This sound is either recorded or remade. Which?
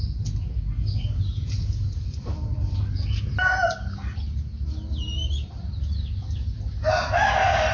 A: recorded